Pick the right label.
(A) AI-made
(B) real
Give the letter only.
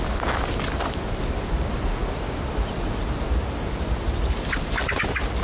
B